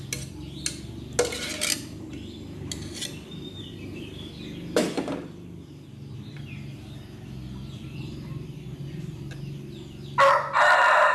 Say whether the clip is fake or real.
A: real